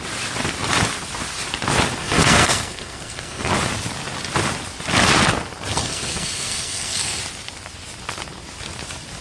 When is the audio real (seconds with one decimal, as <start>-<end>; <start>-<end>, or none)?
0.0-2.0; 3.5-5.7; 7.2-9.2